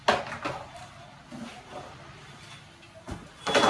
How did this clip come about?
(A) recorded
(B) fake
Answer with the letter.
A